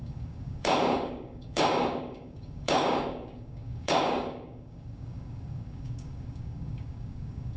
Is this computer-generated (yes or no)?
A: yes